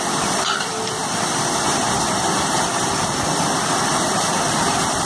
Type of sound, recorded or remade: remade